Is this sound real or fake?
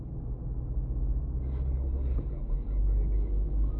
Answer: real